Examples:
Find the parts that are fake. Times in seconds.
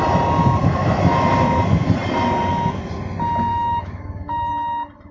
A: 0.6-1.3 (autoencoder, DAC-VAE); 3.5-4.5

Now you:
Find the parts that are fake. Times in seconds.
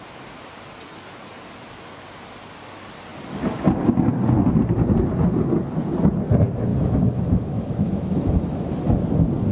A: 6.7-8.6 (autoencoder, DAC-VAE)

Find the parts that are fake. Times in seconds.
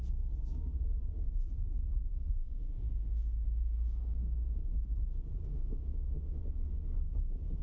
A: 2.1-4.6 (autoencoder, DAC-VAE); 5.5-6.4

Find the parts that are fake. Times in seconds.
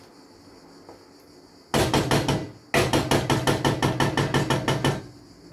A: none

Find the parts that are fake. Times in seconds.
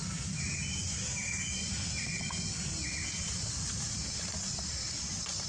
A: none